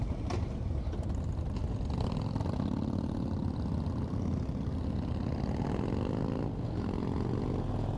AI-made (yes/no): no